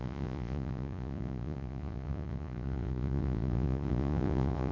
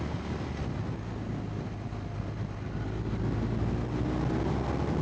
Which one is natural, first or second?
second